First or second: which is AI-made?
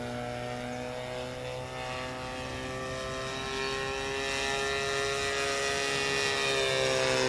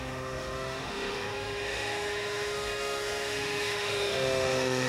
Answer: second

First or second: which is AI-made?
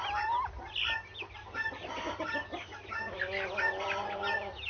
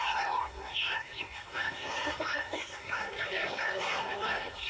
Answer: second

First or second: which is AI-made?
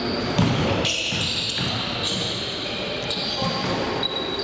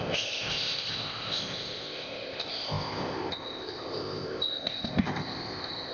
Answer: second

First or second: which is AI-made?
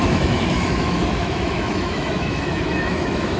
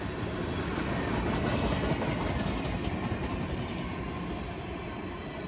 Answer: first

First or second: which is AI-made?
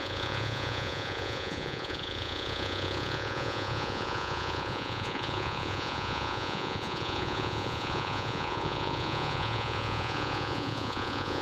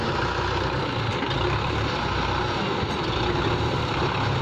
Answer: first